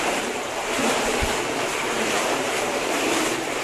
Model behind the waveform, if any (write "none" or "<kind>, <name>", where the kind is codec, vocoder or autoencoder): vocoder, BigVGAN v2